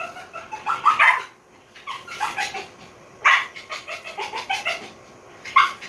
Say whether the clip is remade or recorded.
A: recorded